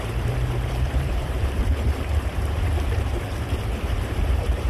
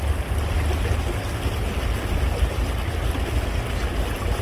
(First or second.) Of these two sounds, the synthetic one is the first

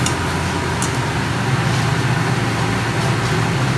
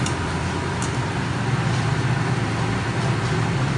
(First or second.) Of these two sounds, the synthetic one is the second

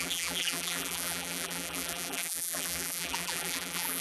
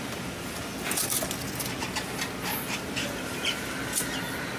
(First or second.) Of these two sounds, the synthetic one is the first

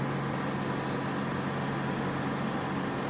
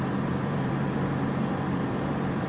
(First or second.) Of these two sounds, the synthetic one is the second